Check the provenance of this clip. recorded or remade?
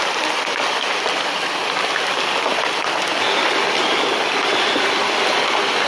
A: recorded